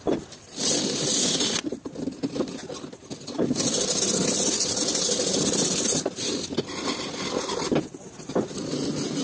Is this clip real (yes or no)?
yes